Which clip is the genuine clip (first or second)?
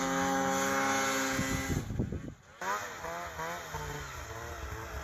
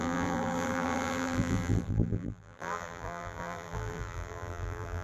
first